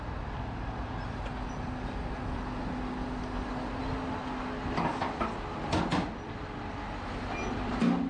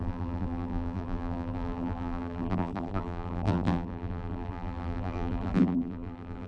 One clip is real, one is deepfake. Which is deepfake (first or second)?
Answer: second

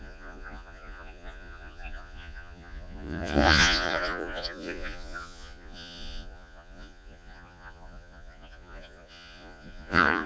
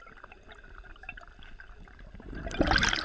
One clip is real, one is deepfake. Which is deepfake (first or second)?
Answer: first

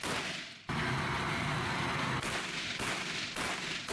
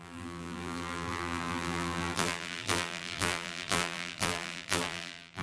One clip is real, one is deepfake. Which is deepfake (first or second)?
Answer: second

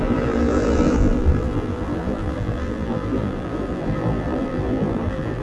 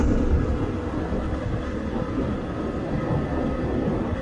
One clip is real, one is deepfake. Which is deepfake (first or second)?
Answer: first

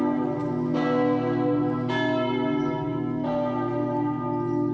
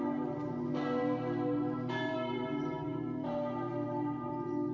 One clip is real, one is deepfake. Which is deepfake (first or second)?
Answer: second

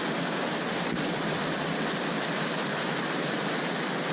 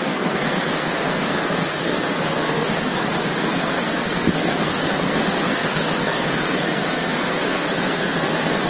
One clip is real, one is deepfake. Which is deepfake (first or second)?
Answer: second